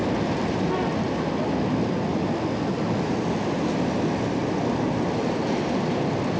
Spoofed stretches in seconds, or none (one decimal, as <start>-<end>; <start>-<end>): none